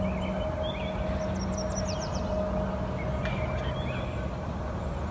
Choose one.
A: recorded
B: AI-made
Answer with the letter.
A